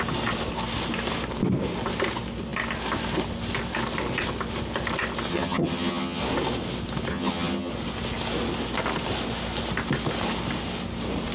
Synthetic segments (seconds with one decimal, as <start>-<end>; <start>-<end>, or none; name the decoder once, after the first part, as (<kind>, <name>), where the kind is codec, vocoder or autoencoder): 5.3-6.2 (vocoder, HiFi-GAN); 7.1-7.7